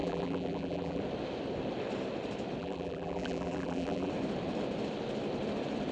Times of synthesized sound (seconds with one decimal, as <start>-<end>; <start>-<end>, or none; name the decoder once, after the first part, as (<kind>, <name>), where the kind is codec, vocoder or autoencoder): 0.0-1.0 (vocoder, BigVGAN v2); 2.6-4.1